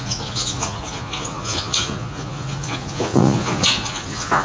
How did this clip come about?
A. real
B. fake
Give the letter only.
B